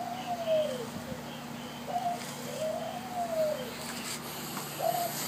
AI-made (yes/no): no